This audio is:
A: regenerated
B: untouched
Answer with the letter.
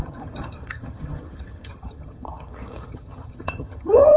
A